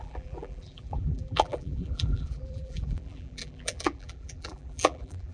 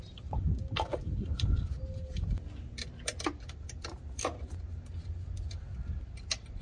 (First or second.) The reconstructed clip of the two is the first